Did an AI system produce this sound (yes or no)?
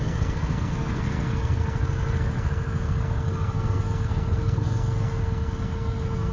yes